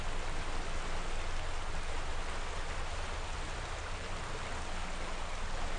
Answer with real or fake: real